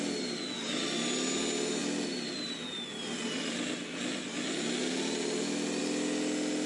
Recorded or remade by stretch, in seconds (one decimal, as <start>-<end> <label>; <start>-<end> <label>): 0.0-6.7 recorded